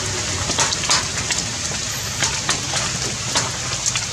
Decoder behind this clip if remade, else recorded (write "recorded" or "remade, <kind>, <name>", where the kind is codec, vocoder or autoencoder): recorded